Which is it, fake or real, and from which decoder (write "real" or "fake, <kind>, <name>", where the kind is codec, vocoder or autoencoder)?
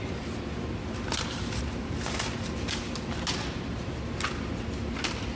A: real